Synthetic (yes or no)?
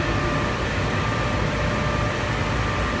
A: no